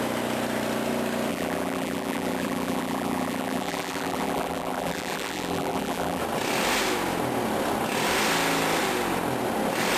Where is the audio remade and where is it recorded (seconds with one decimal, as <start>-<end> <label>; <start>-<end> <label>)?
0.0-1.3 recorded; 1.3-6.2 remade; 6.2-10.0 recorded